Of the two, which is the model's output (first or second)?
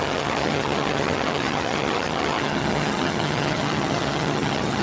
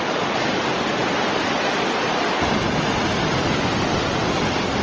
first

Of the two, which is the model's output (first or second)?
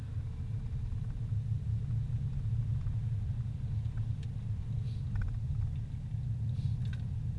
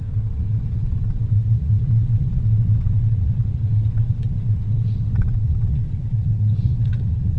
second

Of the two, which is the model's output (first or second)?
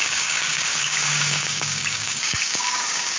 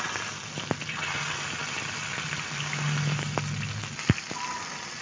first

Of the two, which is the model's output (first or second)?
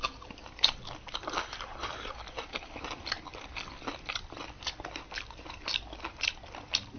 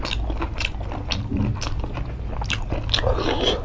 first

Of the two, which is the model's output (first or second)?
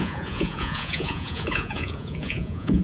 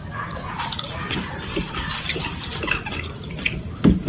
first